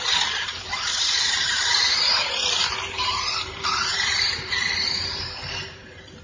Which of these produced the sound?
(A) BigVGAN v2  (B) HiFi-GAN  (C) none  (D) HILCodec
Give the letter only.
A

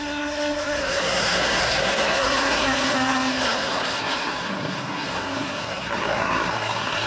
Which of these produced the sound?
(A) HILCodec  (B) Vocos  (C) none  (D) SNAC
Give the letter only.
D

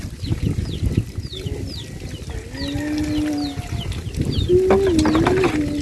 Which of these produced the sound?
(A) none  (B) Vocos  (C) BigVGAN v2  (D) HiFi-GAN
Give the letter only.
A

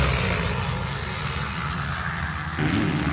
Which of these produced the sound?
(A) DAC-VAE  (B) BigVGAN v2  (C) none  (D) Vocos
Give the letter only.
C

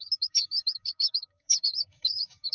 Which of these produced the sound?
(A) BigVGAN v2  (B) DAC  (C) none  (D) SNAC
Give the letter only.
B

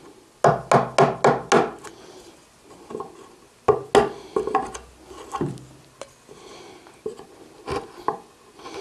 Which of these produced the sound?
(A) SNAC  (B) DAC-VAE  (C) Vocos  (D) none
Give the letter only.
D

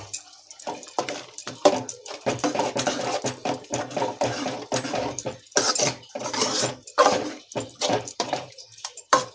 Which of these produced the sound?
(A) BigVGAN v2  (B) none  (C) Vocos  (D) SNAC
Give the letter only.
A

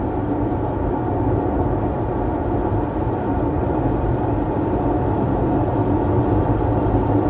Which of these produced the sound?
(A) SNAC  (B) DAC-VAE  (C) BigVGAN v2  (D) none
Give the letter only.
D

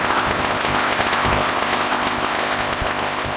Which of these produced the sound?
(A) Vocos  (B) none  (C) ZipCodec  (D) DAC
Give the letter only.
C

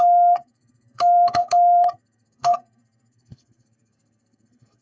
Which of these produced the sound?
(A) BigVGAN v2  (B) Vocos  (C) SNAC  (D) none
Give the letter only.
C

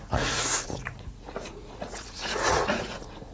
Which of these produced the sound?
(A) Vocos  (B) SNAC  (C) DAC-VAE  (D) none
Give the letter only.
A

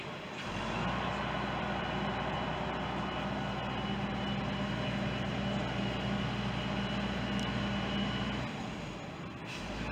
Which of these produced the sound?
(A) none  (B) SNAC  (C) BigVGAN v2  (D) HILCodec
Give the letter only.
A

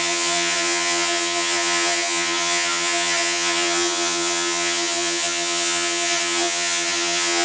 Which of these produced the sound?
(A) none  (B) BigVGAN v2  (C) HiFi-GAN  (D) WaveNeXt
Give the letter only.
C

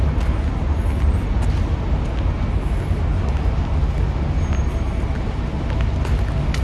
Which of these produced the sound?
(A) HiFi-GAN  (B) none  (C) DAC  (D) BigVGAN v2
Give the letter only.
B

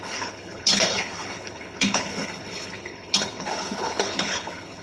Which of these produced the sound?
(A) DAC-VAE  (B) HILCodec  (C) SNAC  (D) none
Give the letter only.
B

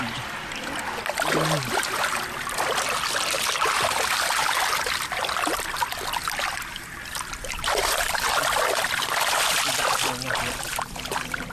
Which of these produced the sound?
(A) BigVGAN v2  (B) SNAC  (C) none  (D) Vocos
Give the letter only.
C